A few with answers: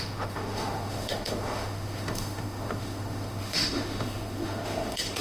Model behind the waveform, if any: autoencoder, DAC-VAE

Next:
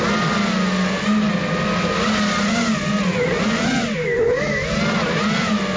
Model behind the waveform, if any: none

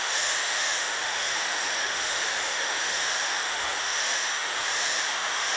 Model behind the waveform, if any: autoencoder, DAC-VAE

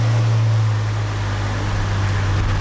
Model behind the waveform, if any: none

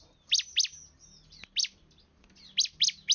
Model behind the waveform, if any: none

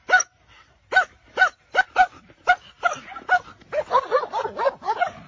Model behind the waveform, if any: none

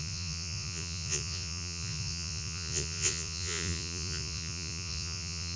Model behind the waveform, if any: vocoder, Vocos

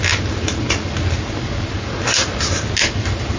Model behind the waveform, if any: none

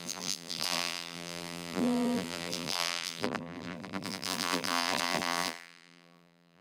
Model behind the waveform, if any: vocoder, BigVGAN v2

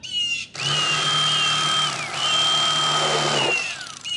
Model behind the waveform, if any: none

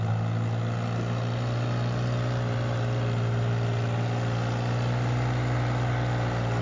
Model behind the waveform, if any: none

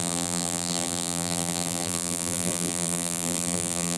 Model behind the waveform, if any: vocoder, BigVGAN v2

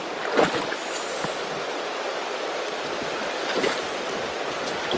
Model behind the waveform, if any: none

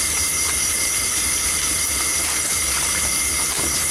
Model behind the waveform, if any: none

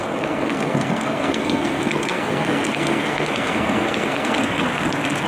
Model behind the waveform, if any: codec, SNAC